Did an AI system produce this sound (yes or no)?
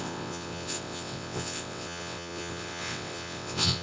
yes